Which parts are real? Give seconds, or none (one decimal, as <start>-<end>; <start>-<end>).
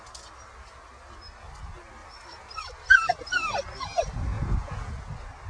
0.0-4.3; 4.9-5.5